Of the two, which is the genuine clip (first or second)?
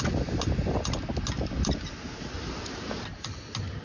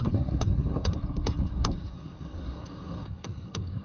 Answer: first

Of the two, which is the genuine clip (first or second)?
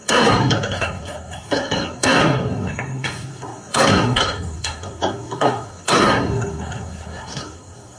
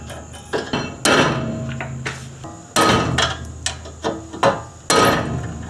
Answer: second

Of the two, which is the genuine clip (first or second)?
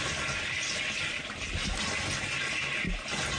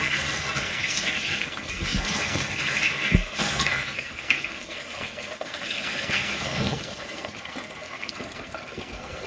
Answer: first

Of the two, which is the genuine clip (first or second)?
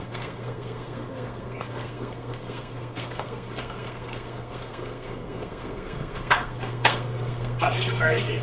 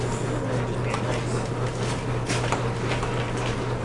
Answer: second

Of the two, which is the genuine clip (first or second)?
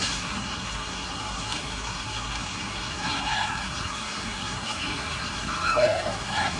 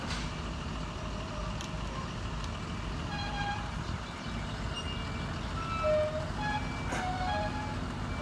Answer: second